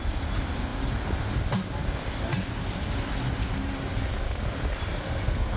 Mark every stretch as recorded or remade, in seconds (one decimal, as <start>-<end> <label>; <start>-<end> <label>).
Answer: 0.0-4.9 recorded; 4.9-5.6 remade